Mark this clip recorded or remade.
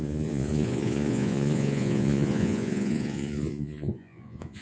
remade